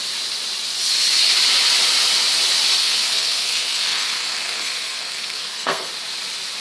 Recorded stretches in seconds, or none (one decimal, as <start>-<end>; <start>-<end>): 0.0-2.8; 5.9-6.6